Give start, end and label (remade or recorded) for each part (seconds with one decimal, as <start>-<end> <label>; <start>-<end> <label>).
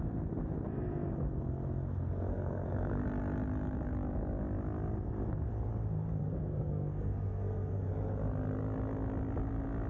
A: 0.0-2.3 recorded; 2.3-3.0 remade; 3.0-6.2 recorded; 6.2-7.9 remade; 7.9-9.9 recorded